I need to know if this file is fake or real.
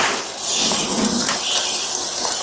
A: real